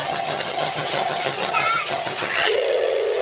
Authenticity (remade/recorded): remade